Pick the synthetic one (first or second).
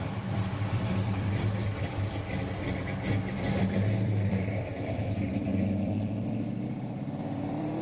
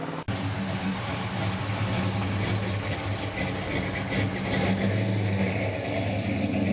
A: first